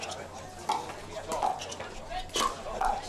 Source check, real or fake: real